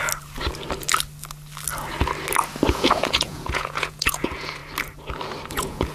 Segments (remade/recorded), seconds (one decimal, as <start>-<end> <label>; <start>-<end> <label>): 0.0-2.7 recorded; 2.7-4.6 remade; 4.6-5.5 recorded; 5.5-5.9 remade